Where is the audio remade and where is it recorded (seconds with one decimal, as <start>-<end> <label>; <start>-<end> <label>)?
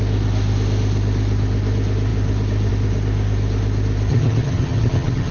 0.0-4.1 recorded; 4.1-5.3 remade